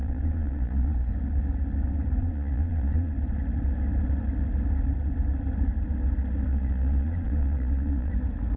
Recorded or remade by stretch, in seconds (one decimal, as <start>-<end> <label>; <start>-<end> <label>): 0.0-1.1 remade; 1.1-2.2 recorded; 2.2-3.1 remade; 3.1-6.5 recorded; 6.5-8.1 remade; 8.1-8.6 recorded